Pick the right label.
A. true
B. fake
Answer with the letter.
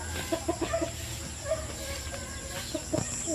A